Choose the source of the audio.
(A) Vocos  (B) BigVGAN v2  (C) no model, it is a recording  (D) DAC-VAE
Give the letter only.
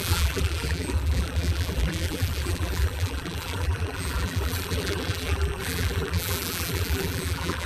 B